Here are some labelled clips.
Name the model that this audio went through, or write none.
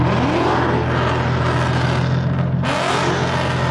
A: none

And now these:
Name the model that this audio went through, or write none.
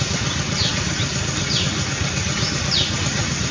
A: none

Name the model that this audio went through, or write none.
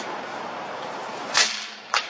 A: none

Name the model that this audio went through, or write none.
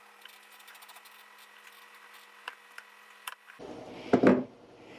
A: vocoder, BigVGAN v2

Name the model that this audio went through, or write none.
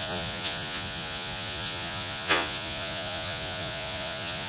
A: vocoder, Vocos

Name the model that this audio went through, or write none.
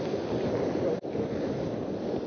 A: none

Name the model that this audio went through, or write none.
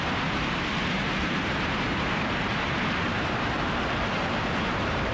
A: vocoder, BigVGAN v2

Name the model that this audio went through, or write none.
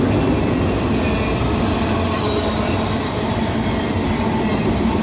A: none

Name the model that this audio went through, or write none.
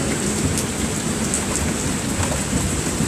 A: none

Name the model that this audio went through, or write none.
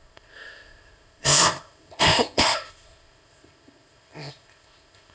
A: codec, ZipCodec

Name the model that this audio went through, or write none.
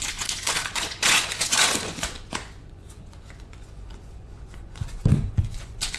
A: vocoder, Vocos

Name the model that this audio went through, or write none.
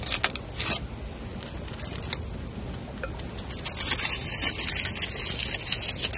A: none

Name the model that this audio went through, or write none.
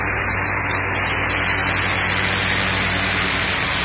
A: none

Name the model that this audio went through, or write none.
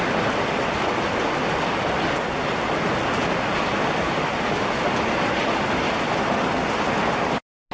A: none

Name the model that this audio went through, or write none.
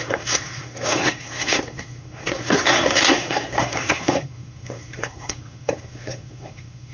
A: codec, SNAC